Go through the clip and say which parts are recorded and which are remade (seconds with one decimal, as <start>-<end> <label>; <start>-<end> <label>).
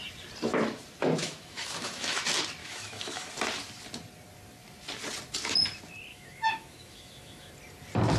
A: 0.0-1.2 recorded; 1.2-2.2 remade; 2.2-2.6 recorded; 2.6-3.3 remade; 3.3-6.1 recorded; 6.1-7.5 remade; 7.5-8.2 recorded